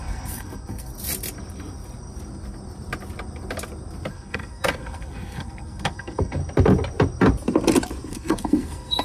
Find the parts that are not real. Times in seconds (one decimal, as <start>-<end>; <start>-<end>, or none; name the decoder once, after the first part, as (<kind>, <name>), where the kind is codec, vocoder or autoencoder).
0.0-0.9 (codec, SNAC); 4.1-6.4; 8.1-9.0